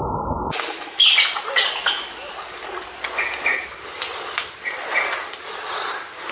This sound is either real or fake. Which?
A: real